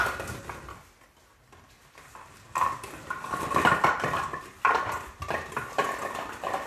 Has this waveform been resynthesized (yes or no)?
no